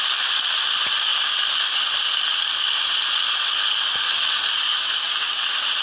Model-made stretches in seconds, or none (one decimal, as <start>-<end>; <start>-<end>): none

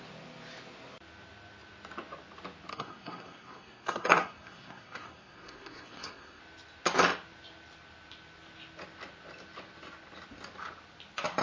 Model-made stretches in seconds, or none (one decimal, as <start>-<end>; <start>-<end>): 2.7-6.4

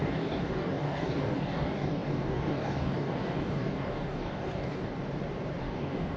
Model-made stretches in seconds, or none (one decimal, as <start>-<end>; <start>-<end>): 0.0-4.9; 5.6-6.2

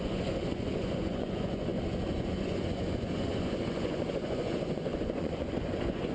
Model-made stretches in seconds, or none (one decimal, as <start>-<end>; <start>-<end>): 0.0-6.1

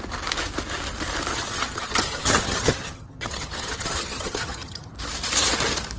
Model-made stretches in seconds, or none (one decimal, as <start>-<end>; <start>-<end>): 1.3-4.9

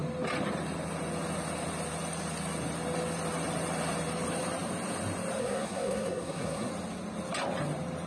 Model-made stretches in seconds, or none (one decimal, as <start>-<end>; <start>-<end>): 5.4-6.7

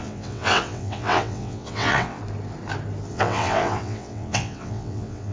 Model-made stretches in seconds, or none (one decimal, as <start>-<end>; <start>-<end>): 0.0-2.2; 3.1-5.3